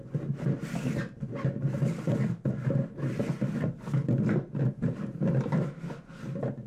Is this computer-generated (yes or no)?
no